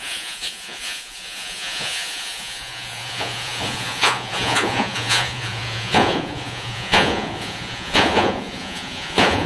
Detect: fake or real fake